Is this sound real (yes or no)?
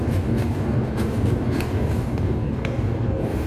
no